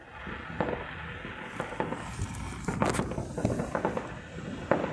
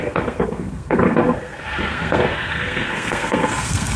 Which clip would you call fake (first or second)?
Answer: second